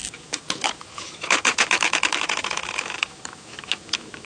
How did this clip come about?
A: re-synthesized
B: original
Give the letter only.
A